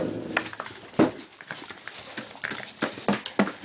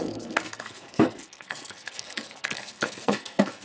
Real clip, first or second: first